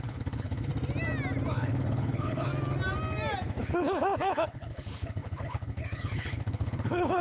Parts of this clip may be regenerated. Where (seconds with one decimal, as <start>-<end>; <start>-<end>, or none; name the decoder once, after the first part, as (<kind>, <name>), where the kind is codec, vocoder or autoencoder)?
0.0-0.7 (codec, HILCodec); 1.5-2.5; 3.6-7.2